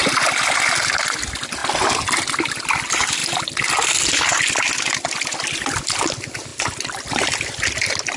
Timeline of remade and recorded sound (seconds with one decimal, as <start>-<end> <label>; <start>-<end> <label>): 0.0-8.2 recorded